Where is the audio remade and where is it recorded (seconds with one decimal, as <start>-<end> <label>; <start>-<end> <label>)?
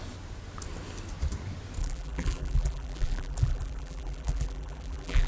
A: 0.0-1.8 recorded; 1.8-5.3 remade